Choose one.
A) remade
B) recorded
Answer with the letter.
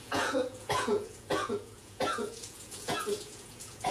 A